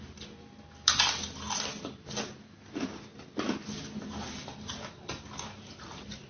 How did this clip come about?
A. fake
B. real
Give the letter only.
B